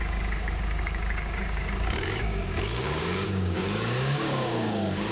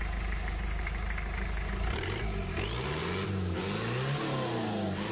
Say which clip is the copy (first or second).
first